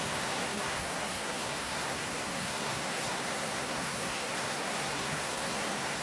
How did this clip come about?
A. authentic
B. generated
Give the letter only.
B